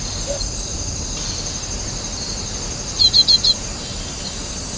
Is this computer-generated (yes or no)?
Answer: no